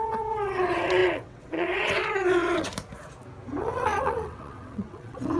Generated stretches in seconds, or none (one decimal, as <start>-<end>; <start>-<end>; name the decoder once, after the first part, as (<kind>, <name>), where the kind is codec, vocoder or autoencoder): 0.0-2.7 (vocoder, WaveNeXt); 3.6-5.4